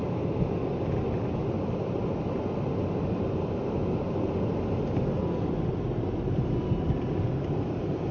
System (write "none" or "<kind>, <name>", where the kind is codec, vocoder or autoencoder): none